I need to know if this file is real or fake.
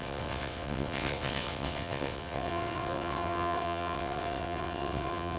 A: fake